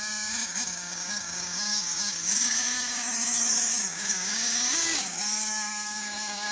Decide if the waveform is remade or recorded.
remade